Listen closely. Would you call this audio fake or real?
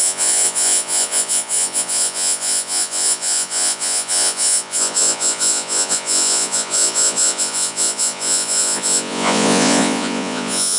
fake